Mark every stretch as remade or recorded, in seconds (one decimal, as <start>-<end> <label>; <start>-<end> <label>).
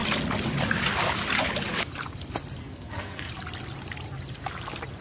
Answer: 0.0-2.6 recorded; 2.6-3.3 remade; 3.3-5.0 recorded